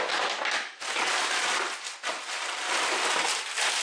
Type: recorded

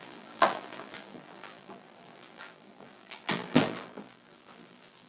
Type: remade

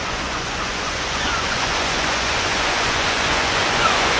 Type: remade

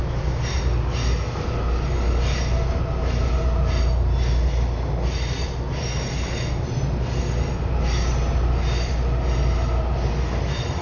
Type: recorded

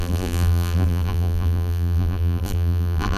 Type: remade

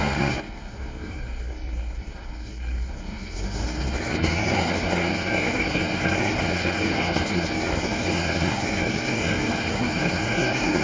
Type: remade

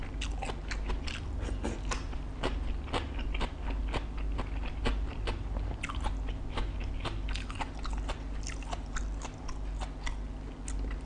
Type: recorded